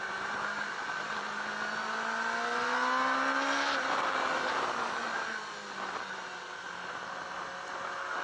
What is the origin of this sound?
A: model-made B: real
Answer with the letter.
B